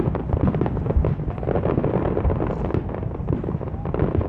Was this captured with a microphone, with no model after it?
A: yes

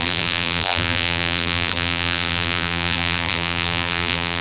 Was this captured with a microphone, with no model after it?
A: no